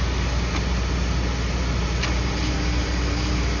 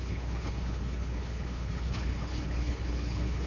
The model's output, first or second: second